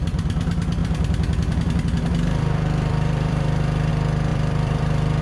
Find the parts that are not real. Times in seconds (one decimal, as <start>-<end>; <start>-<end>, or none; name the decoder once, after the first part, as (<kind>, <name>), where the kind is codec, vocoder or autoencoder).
0.8-3.9 (vocoder, BigVGAN v2); 4.3-5.2